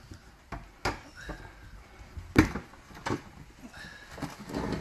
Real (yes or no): yes